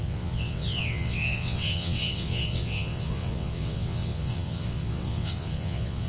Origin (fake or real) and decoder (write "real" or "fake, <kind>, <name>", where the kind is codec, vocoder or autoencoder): fake, vocoder, WaveNeXt